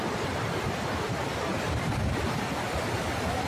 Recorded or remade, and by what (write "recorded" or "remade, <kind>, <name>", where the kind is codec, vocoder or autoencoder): recorded